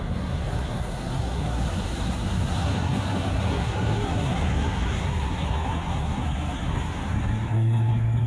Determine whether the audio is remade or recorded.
remade